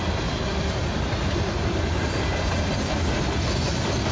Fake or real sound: real